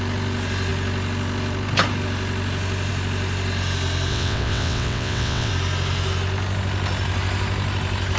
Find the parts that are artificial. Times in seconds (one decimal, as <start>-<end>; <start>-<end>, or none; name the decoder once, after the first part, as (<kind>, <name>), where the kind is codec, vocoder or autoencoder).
4.1-5.5 (vocoder, WaveNeXt)